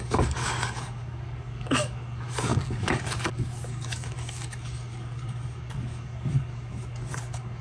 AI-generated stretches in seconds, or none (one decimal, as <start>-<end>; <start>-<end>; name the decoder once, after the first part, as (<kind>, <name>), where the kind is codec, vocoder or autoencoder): 0.0-7.6 (codec, DAC)